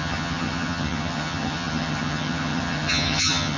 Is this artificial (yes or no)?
yes